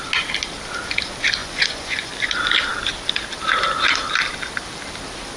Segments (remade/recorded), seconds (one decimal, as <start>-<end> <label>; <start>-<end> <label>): 0.0-1.4 recorded; 1.4-2.1 remade; 2.1-5.4 recorded